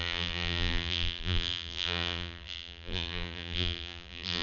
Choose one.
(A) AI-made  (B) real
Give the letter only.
A